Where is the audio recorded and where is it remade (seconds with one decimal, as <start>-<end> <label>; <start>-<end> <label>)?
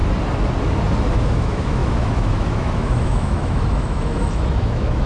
0.0-1.1 recorded; 1.1-5.1 remade